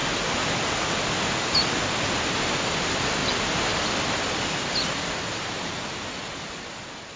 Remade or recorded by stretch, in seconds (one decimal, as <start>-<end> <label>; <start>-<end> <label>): 0.0-7.2 recorded